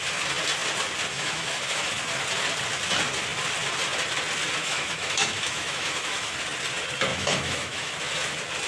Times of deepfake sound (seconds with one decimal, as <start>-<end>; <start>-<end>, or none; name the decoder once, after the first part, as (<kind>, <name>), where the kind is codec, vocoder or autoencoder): 1.1-1.9 (autoencoder, DAC-VAE); 4.6-6.4; 7.1-7.9